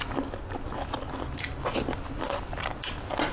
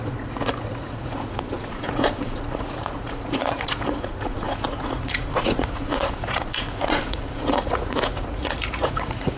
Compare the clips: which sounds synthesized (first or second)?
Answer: second